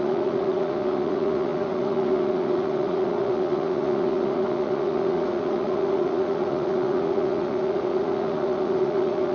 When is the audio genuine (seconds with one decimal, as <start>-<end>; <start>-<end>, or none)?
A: none